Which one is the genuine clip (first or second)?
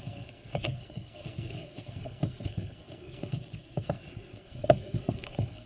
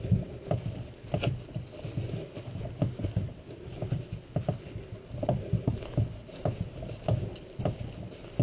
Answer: second